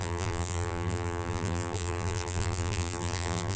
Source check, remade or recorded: remade